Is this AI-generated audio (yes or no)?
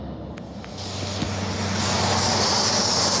no